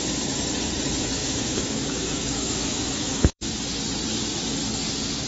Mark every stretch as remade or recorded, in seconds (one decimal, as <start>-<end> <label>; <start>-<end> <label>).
0.0-1.2 recorded; 1.2-3.5 remade; 3.5-5.3 recorded